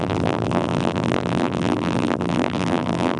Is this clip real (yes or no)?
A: no